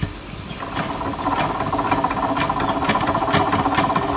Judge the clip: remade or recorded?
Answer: recorded